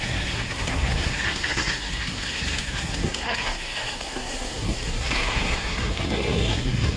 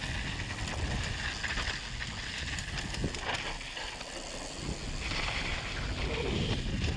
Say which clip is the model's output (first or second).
first